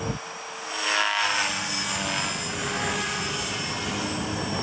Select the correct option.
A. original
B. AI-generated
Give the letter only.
A